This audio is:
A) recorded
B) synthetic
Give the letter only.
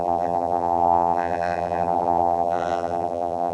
B